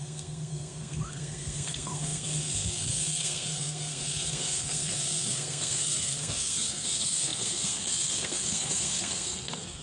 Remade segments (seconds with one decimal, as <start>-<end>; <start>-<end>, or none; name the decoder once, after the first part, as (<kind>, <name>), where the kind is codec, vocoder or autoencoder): 0.0-9.8 (codec, SNAC)